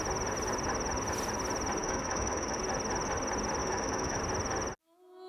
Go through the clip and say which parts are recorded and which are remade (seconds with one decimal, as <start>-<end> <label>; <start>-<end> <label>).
0.0-1.8 recorded; 1.8-2.6 remade; 2.6-3.6 recorded; 3.6-4.2 remade; 4.2-5.3 recorded